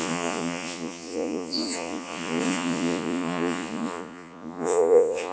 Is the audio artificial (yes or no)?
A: yes